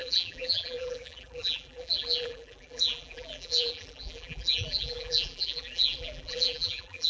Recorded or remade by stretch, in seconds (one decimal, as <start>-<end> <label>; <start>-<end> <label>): 0.0-7.1 remade